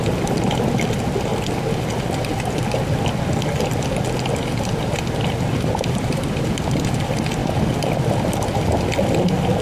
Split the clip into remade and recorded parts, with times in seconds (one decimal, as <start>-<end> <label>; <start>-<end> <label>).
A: 0.0-9.6 recorded